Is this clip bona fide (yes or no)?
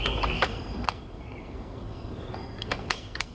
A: no